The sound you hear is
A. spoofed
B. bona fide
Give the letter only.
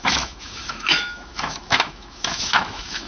A